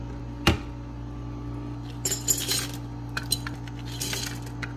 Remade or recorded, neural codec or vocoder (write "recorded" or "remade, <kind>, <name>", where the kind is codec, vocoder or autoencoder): recorded